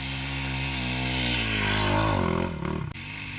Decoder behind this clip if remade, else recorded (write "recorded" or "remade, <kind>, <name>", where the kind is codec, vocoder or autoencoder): recorded